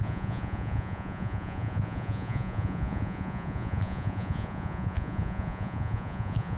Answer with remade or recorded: remade